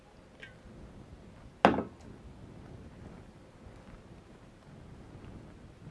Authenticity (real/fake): real